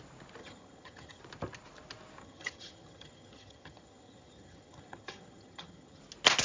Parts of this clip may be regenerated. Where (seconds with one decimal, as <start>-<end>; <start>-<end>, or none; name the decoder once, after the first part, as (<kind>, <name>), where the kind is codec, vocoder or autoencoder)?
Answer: 0.4-1.2 (vocoder, HiFi-GAN); 2.2-6.0